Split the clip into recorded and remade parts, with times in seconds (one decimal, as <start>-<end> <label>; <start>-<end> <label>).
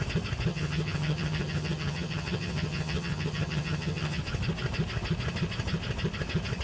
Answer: 0.0-0.5 recorded; 0.5-4.2 remade; 4.2-6.6 recorded